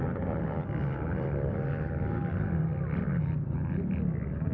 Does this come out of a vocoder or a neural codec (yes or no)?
no